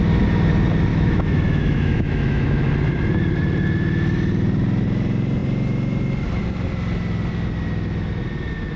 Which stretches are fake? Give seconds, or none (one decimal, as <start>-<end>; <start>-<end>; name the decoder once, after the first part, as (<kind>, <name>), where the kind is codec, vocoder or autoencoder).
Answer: 0.9-2.7 (autoencoder, DAC-VAE)